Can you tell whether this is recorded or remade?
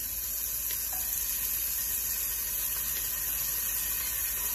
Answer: recorded